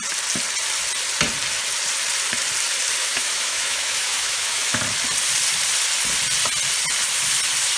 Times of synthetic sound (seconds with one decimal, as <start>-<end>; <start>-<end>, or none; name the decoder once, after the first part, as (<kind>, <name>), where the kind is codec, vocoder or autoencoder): 3.0-4.8 (autoencoder, DAC-VAE)